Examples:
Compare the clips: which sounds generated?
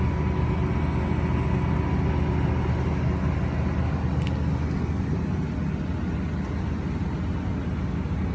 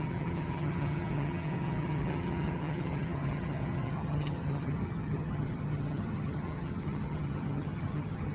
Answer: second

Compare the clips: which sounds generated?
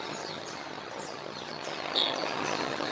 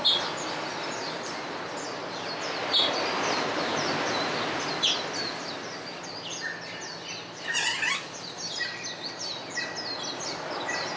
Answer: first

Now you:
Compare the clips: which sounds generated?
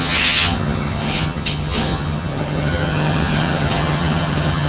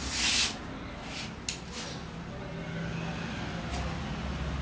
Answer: first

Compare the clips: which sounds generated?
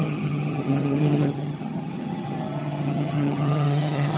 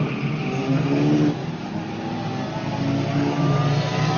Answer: first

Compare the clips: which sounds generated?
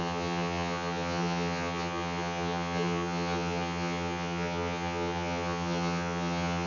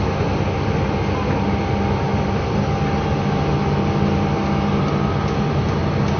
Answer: first